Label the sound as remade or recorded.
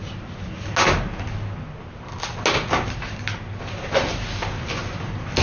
recorded